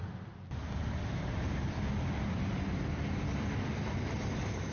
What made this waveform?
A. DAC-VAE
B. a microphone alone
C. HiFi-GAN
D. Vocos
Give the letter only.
B